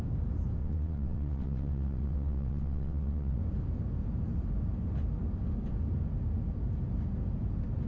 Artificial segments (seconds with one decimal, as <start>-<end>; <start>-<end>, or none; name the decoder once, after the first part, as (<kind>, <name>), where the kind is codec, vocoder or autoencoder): 0.6-3.4 (vocoder, WaveNeXt)